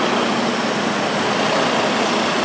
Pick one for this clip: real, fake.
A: real